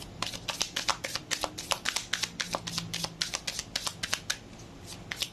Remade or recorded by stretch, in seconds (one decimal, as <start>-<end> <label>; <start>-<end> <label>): 0.0-5.3 recorded